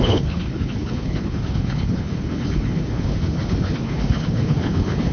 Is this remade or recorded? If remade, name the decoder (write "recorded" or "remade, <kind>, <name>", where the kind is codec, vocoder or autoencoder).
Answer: remade, codec, HILCodec